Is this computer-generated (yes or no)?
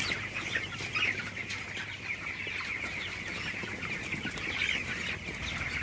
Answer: no